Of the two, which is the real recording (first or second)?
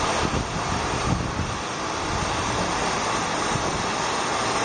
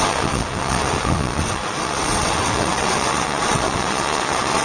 first